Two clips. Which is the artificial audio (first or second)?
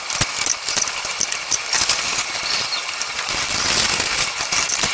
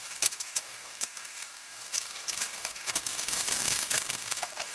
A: second